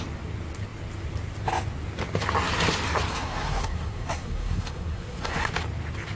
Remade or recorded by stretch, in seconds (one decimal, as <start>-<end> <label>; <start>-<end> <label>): 0.0-3.1 recorded; 3.1-5.5 remade; 5.5-6.2 recorded